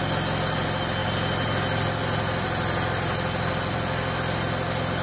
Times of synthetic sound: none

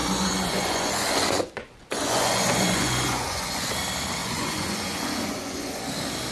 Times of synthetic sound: 0.0-3.7 (vocoder, Vocos); 4.2-5.8

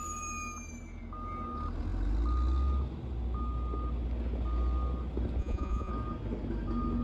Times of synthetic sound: 5.4-5.9 (vocoder, Vocos)

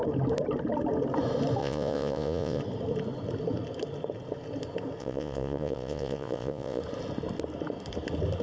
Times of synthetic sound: 1.6-2.6 (vocoder, Vocos); 5.0-6.8

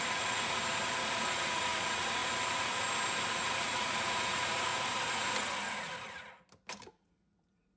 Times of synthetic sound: 0.0-0.6 (vocoder, Vocos); 1.2-2.2; 3.3-4.7; 6.9-7.8

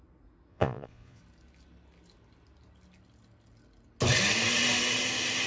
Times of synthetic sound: 0.5-1.2 (vocoder, Vocos)